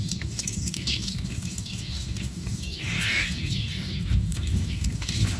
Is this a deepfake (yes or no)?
yes